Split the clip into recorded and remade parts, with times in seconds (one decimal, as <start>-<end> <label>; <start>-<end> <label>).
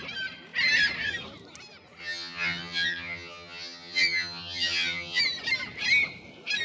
0.0-2.0 recorded; 2.0-5.2 remade; 5.2-6.6 recorded